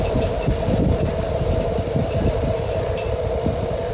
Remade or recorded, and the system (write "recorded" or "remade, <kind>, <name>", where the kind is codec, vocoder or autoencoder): remade, vocoder, BigVGAN v2